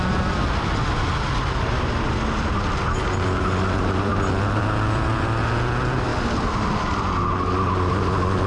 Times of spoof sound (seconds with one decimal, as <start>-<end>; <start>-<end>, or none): none